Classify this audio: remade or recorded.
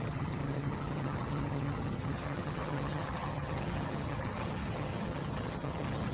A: remade